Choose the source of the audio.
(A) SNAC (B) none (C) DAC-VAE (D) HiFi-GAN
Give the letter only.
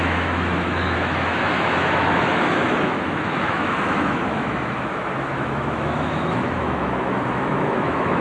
C